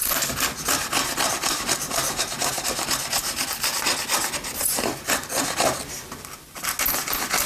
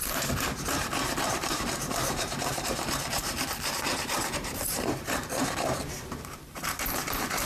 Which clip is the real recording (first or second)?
first